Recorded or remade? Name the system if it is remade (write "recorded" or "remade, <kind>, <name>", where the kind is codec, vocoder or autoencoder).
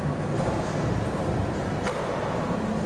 recorded